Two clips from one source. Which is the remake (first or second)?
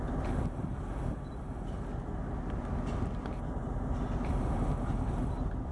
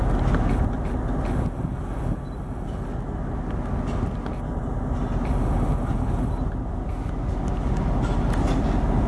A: first